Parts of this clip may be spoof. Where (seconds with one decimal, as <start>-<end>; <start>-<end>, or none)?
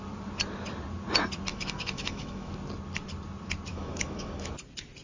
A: 1.5-2.5; 3.7-4.5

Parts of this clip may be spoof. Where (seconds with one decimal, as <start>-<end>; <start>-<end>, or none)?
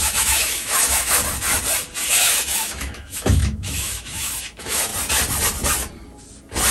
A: 0.0-1.2; 2.1-4.9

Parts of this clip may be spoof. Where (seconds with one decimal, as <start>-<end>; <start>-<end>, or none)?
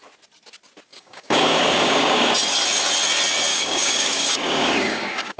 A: 0.9-2.3; 3.5-5.4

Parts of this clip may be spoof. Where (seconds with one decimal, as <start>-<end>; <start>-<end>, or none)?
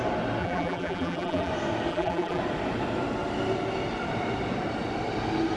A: 0.4-1.5; 1.9-2.4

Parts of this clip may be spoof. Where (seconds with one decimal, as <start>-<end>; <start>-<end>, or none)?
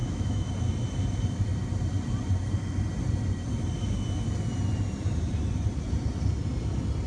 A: 0.0-0.5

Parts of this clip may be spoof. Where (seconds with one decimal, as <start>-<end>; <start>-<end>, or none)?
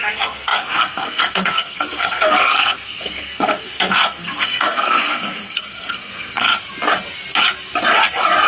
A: 0.0-6.5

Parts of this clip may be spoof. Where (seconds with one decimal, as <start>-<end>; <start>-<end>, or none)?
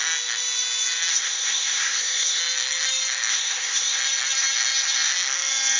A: 1.1-2.4; 3.3-4.0